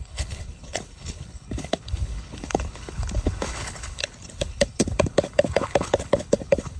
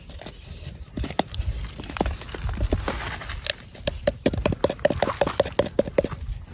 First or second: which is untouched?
second